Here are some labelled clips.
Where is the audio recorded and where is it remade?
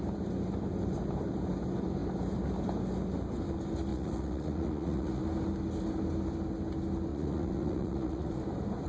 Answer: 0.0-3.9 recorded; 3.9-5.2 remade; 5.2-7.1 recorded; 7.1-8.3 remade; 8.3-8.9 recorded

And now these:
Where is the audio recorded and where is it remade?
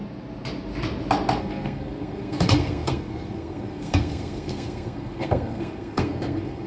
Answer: 0.0-1.4 recorded; 1.4-6.7 remade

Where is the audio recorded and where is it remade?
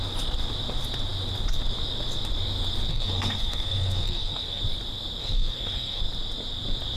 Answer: 0.0-2.9 recorded; 2.9-4.6 remade; 4.6-5.2 recorded; 5.2-6.0 remade; 6.0-7.0 recorded